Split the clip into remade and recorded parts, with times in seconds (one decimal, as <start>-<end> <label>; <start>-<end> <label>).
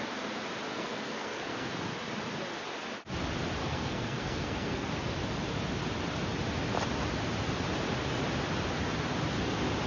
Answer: 0.0-0.7 recorded; 0.7-1.7 remade; 1.7-3.6 recorded; 3.6-4.9 remade; 4.9-9.9 recorded